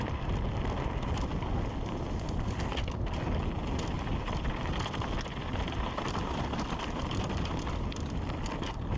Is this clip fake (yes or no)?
no